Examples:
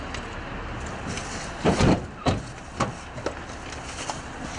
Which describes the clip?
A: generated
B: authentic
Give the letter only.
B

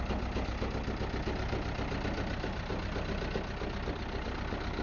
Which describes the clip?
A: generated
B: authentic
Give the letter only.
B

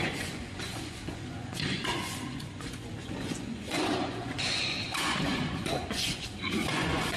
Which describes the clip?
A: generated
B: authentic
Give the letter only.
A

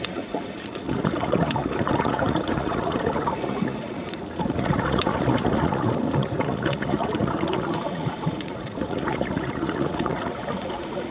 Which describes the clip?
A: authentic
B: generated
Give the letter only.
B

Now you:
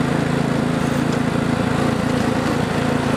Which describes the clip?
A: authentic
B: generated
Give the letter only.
A